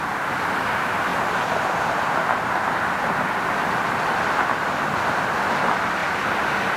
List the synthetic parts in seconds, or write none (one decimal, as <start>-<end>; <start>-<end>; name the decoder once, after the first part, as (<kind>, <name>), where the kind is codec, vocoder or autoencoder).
none